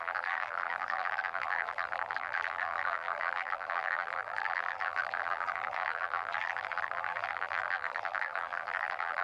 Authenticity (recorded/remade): remade